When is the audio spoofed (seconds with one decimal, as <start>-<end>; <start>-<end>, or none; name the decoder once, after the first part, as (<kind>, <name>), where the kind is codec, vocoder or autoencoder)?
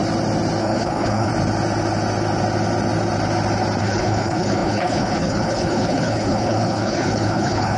0.6-1.3 (codec, HILCodec); 3.8-7.8